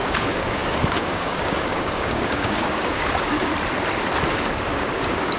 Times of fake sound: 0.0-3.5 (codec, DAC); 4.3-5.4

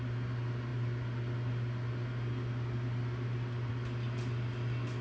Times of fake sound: none

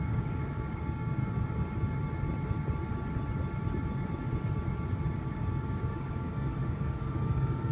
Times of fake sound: 0.0-1.2 (codec, DAC); 5.3-7.7